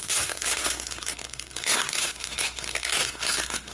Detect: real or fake fake